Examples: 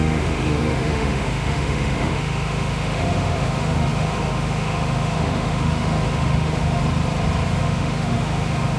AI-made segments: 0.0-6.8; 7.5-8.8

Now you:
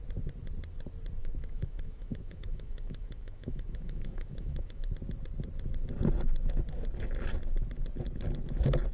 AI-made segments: 1.2-4.9

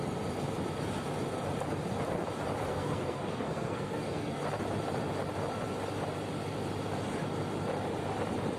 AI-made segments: 2.7-4.4

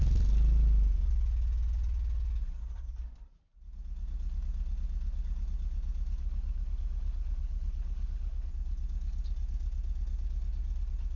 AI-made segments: 6.2-8.5

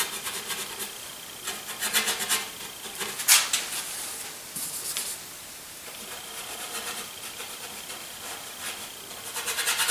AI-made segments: 5.4-7.2